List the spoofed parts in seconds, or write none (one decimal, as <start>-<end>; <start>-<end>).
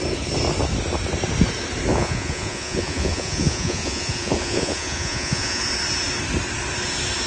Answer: 1.9-5.6